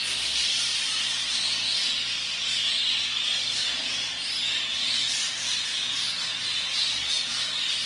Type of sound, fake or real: real